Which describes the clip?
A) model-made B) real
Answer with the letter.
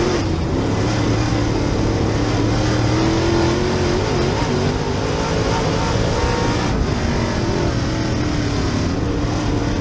B